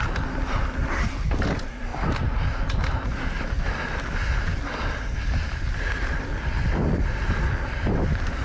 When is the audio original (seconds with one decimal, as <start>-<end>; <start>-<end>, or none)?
0.0-8.4